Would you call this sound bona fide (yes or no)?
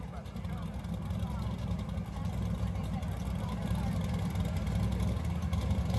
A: yes